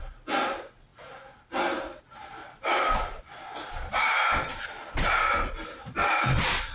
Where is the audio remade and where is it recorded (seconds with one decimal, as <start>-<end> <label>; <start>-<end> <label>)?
0.0-6.7 recorded